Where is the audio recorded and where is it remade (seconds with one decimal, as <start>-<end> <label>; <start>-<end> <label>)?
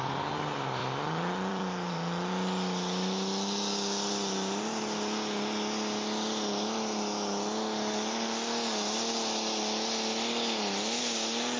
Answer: 0.0-0.8 recorded; 0.8-2.3 remade; 2.3-11.6 recorded